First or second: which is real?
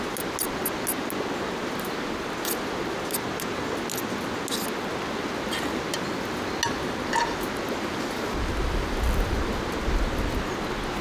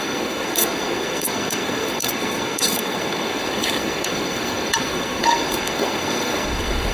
first